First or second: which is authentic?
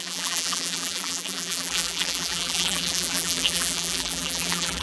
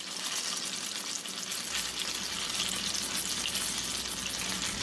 second